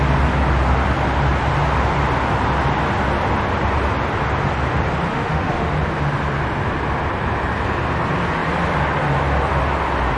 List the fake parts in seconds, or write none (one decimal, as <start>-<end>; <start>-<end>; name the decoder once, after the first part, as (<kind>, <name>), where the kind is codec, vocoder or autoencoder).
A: 5.1-5.7 (autoencoder, DAC-VAE)